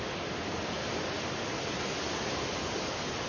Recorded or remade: recorded